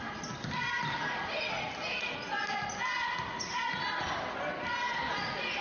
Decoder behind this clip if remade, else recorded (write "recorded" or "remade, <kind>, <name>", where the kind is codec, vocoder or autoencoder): recorded